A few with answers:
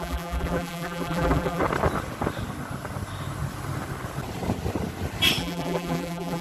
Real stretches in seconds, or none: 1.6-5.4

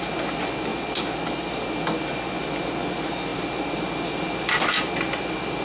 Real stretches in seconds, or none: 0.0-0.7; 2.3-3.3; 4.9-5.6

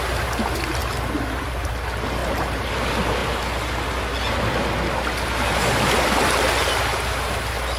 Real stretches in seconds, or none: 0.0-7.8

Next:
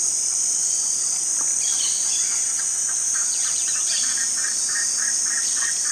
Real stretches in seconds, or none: 0.0-1.5; 5.0-5.9

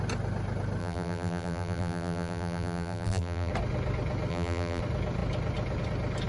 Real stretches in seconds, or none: 0.0-0.8; 3.5-4.3; 4.8-6.3

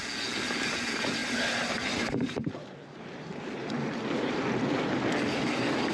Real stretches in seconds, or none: 0.0-1.2; 3.7-5.9